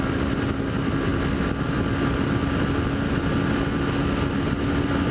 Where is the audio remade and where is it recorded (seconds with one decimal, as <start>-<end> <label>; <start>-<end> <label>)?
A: 0.0-5.1 recorded